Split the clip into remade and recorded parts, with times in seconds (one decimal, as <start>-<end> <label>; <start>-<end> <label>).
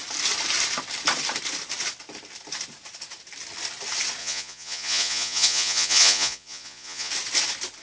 0.0-4.2 recorded; 4.2-7.1 remade; 7.1-7.8 recorded